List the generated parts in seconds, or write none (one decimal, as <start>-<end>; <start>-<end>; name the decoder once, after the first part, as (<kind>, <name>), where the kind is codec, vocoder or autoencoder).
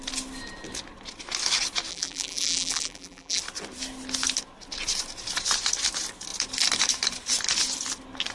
1.9-3.4 (vocoder, BigVGAN v2)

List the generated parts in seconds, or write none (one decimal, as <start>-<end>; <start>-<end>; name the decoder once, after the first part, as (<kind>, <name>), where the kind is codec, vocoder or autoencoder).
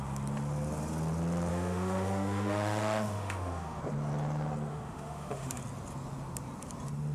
1.5-3.8 (autoencoder, DAC-VAE); 4.7-5.6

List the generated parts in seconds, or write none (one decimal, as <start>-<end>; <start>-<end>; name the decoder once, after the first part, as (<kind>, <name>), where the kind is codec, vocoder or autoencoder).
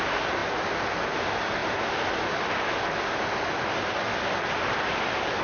none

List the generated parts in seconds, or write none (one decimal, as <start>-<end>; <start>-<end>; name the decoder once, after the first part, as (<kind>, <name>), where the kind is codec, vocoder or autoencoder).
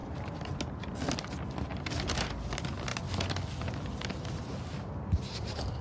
0.0-0.6 (vocoder, BigVGAN v2); 1.7-2.3